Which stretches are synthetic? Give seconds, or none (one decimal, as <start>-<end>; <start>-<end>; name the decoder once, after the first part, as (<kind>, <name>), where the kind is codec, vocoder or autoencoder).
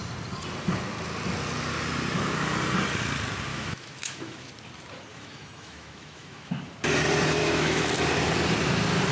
3.5-4.5 (autoencoder, DAC-VAE); 5.1-6.5; 7.4-7.9